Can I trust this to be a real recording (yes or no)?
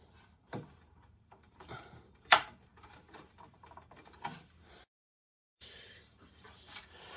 no